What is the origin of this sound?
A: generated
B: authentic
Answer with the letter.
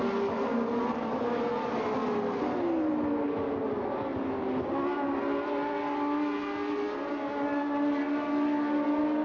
B